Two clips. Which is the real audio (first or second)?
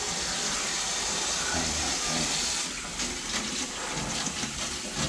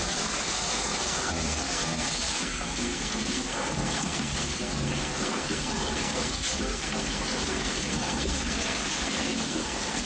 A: first